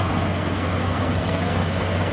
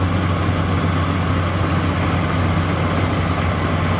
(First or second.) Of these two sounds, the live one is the second